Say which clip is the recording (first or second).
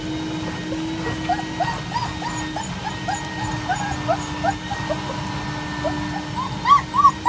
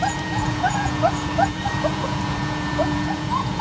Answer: first